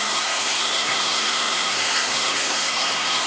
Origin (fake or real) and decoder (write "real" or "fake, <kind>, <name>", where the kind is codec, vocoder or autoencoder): fake, codec, SNAC